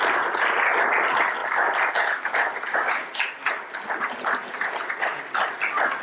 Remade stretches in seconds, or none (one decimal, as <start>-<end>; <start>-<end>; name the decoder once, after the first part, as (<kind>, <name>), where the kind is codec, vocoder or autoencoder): none